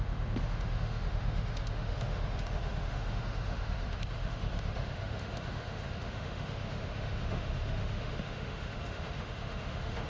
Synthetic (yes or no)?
yes